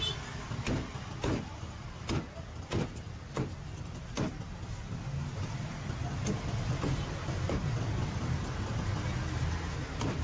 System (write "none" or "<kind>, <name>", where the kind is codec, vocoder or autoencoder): none